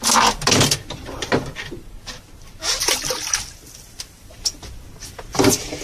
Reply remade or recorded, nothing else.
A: recorded